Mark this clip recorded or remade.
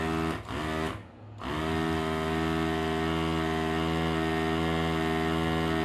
recorded